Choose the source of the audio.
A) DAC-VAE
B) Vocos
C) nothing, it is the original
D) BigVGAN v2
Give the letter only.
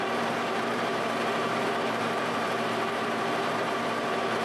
D